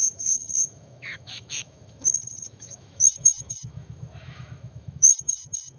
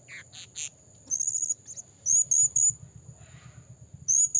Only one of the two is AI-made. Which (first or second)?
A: first